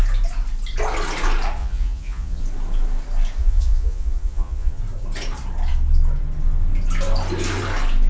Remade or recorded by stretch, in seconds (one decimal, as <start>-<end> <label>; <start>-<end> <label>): 0.0-1.6 recorded; 1.6-2.4 remade; 2.4-3.4 recorded; 3.4-4.8 remade; 4.8-8.1 recorded